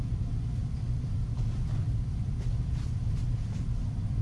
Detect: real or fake fake